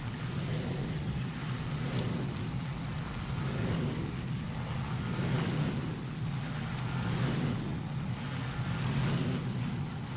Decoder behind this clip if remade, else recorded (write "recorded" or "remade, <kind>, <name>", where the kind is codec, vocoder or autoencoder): recorded